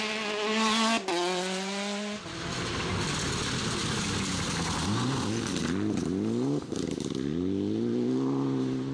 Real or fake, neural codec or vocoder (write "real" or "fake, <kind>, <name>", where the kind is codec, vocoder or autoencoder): real